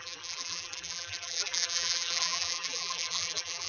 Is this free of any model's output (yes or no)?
no